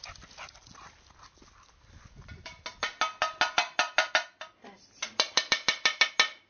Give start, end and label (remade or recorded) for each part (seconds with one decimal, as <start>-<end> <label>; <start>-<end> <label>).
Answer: 0.0-6.5 recorded